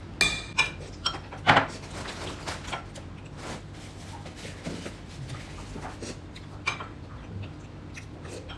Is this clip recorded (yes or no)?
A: yes